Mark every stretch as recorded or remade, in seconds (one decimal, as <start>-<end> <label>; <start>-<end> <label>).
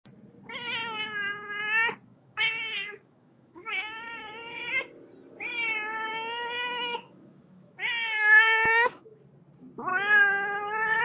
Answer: 0.0-2.1 recorded; 2.1-4.6 remade; 4.6-6.1 recorded; 6.1-9.2 remade; 9.2-11.0 recorded